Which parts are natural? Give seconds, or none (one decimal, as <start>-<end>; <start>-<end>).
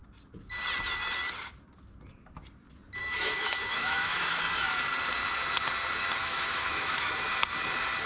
0.0-3.0; 4.4-6.2; 7.1-8.1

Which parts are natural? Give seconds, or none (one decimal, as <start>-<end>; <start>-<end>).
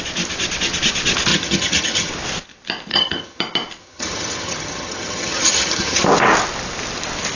0.0-1.3; 2.1-2.9; 3.4-3.8; 6.0-7.4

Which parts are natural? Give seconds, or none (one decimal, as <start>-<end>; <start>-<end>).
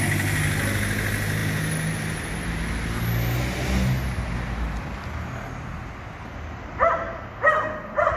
0.0-8.2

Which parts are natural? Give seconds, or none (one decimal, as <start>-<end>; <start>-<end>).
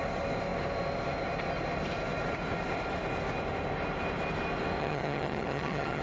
0.0-4.8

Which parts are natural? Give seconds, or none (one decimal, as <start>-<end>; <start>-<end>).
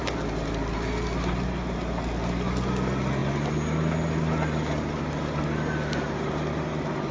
0.0-7.1